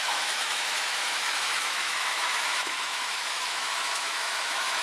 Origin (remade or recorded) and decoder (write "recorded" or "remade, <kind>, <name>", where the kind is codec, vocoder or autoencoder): remade, autoencoder, DAC-VAE